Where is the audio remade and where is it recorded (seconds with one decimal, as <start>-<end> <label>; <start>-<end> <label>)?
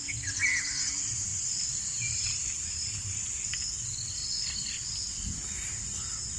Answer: 0.0-1.3 recorded; 1.3-2.5 remade; 2.5-6.4 recorded